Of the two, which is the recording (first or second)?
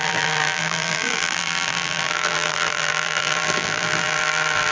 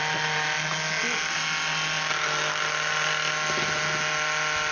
second